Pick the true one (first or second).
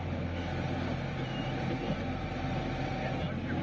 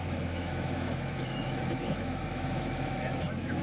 first